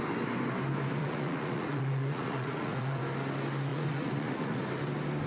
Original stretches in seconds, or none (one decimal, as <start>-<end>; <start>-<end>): 0.0-1.0; 3.0-3.7; 4.6-5.3